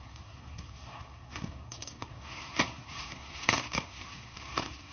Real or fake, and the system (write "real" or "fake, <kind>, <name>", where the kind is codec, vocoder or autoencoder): fake, codec, SNAC